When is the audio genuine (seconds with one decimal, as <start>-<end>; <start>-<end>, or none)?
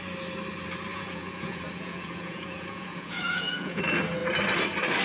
0.0-0.9; 3.8-5.0